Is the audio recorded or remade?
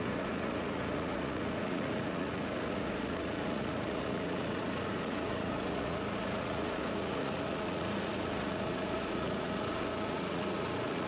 remade